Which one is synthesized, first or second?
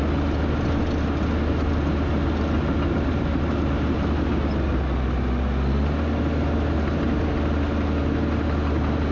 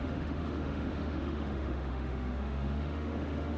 second